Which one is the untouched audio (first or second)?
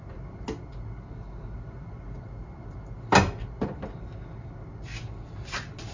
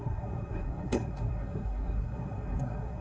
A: first